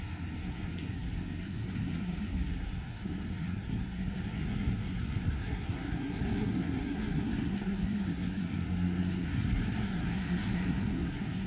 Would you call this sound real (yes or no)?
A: no